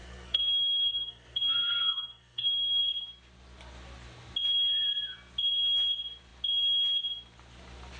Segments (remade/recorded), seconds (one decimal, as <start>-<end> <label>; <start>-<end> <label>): 0.0-2.8 remade; 2.8-8.0 recorded